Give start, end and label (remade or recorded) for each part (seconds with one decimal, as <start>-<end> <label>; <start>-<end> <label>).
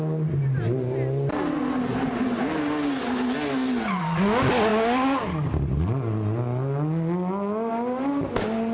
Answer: 0.0-8.7 recorded